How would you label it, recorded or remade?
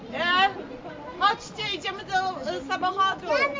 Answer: recorded